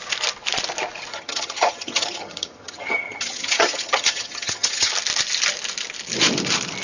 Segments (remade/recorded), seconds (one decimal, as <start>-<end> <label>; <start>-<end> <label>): 0.0-1.1 recorded; 1.1-4.9 remade; 4.9-6.8 recorded